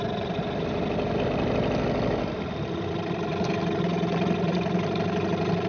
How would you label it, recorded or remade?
recorded